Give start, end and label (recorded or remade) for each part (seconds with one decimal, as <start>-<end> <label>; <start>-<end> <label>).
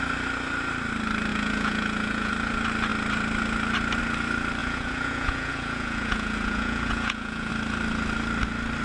0.0-1.3 recorded; 1.3-2.3 remade; 2.3-4.6 recorded; 4.6-7.5 remade; 7.5-8.8 recorded